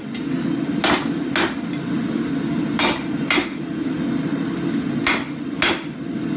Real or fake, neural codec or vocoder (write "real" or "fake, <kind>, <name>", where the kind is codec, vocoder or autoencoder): real